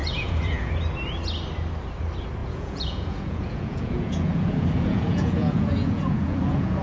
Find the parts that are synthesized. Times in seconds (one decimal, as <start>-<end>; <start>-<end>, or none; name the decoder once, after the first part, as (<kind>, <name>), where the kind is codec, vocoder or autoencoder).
0.0-0.7 (vocoder, Vocos); 2.4-6.8